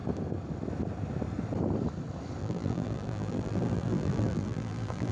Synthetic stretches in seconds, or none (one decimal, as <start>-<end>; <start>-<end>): 2.4-5.1